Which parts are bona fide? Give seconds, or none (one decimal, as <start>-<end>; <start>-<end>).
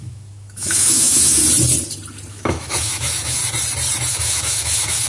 1.4-2.3; 3.4-4.1